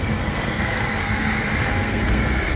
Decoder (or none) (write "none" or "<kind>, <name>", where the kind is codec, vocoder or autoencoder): codec, SNAC